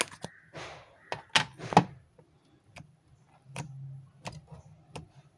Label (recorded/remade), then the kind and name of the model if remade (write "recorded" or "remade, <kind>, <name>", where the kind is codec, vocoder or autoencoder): recorded